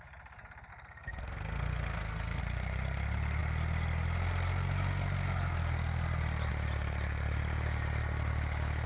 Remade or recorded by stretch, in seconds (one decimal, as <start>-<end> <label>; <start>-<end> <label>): 0.0-0.7 recorded; 0.7-2.4 remade; 2.4-8.9 recorded